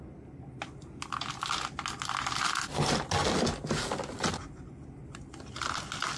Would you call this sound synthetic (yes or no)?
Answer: no